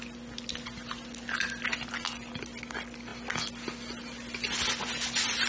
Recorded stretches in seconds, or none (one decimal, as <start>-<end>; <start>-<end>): 0.0-5.5